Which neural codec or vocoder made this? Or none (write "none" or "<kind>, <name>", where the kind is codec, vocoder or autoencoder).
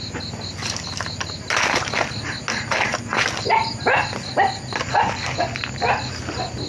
none